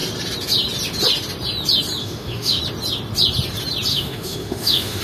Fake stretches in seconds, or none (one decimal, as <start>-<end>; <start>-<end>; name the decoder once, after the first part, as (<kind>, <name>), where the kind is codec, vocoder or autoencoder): 2.0-2.6 (autoencoder, DAC-VAE); 3.9-5.0